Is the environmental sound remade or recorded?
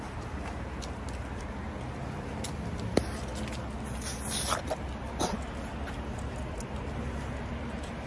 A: recorded